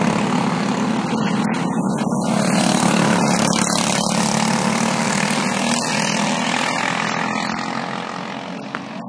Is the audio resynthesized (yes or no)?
no